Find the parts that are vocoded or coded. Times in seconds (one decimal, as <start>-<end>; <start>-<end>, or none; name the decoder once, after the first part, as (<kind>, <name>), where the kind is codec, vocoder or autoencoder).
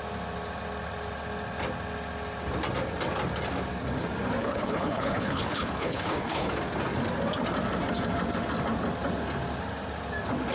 4.4-6.5 (codec, HILCodec)